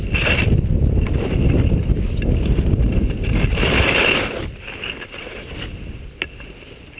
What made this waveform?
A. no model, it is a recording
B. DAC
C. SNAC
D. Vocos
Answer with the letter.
A